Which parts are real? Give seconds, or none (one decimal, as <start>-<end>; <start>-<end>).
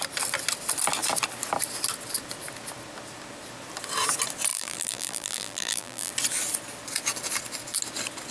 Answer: 0.0-4.5; 6.1-8.3